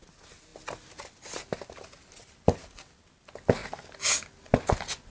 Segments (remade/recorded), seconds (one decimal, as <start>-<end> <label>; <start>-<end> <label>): 0.0-5.1 recorded